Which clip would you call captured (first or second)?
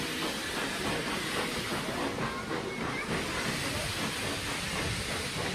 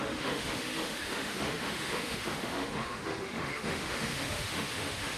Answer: first